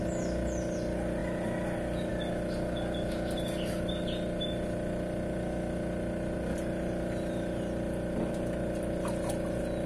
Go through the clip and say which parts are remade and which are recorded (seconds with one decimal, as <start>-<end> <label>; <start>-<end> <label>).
0.0-9.9 recorded